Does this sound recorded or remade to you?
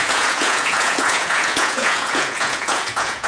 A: remade